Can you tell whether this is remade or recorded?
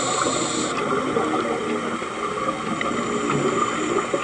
recorded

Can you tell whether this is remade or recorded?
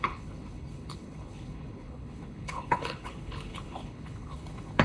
remade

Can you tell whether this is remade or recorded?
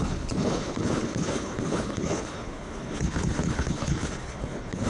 remade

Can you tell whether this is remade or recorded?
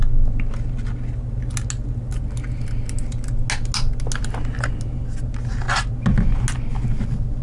recorded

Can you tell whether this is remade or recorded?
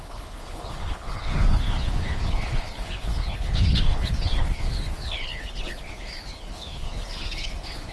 remade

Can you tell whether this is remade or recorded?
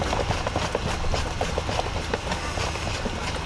recorded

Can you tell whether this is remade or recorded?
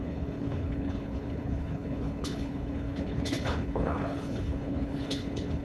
remade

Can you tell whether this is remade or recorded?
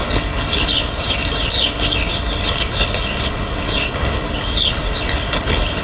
remade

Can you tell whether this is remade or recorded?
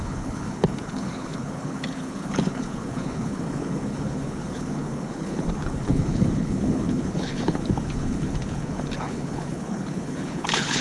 remade